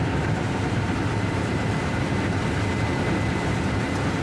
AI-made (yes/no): yes